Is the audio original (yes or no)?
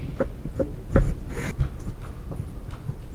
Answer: yes